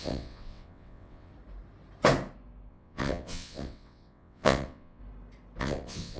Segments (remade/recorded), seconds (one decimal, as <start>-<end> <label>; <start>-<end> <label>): 0.0-1.3 remade; 1.3-2.7 recorded; 2.7-5.0 remade; 5.0-5.6 recorded; 5.6-6.2 remade